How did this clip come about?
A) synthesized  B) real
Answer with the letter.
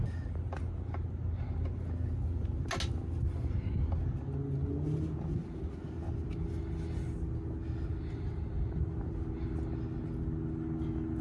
B